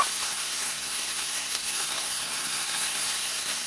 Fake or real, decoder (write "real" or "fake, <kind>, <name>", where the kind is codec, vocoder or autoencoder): fake, codec, SNAC